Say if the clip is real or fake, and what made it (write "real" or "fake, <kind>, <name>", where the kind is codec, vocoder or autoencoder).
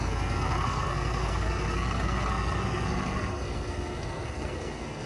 fake, codec, SNAC